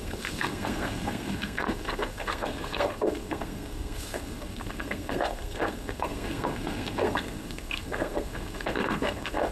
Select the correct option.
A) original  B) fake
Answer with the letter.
B